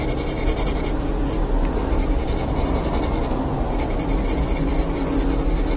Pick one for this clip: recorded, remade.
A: recorded